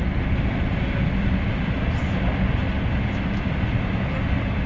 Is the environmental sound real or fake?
real